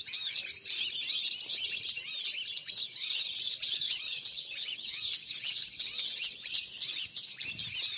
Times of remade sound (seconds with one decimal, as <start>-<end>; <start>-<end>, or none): 2.6-7.4